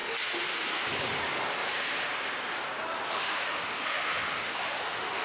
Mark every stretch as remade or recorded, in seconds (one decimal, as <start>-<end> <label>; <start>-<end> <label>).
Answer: 0.0-3.1 recorded; 3.1-5.2 remade